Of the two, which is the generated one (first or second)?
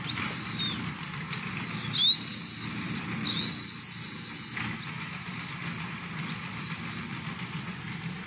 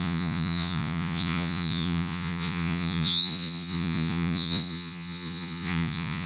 second